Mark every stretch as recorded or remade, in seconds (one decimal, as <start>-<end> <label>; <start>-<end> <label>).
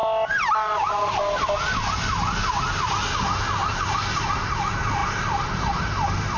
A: 0.0-6.4 recorded